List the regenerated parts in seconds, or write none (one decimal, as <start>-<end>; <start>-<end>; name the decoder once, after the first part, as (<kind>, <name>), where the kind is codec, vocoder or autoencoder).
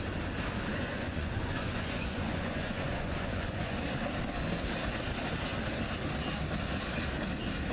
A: 0.7-3.8 (vocoder, Vocos)